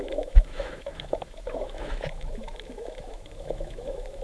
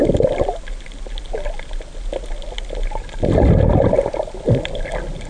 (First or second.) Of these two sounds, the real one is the second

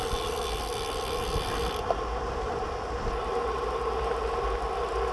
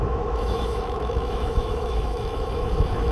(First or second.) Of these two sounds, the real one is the first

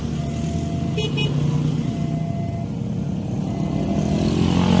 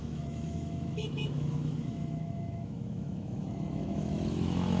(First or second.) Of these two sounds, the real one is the first